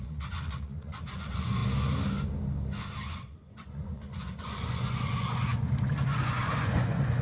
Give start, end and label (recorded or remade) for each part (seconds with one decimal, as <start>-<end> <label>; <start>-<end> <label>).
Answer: 0.0-1.6 remade; 1.6-3.1 recorded; 3.1-7.2 remade